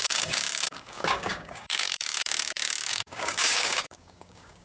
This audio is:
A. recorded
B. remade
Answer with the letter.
B